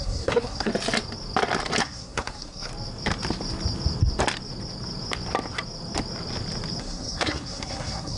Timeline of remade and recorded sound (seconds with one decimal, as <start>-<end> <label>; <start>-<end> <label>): 0.0-0.7 remade; 0.7-1.8 recorded; 1.8-2.7 remade; 2.7-6.8 recorded; 6.8-8.2 remade